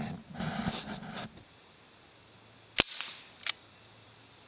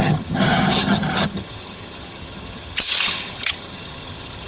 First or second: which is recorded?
first